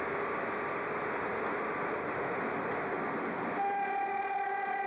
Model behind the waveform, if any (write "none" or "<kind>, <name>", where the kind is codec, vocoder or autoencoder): none